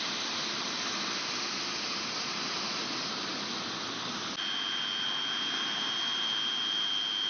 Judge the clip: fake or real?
real